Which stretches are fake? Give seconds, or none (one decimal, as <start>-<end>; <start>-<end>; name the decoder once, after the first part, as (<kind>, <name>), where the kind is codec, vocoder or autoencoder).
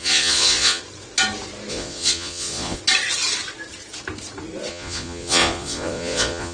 0.0-0.8 (vocoder, Vocos); 1.7-2.8; 4.7-6.5